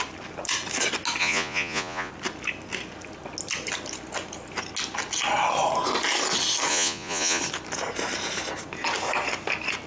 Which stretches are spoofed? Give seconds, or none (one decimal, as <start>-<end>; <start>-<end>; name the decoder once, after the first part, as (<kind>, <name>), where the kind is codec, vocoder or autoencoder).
1.2-2.1 (vocoder, Vocos); 6.7-7.4